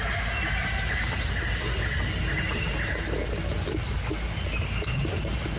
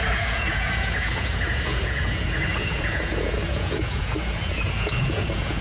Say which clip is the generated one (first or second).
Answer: second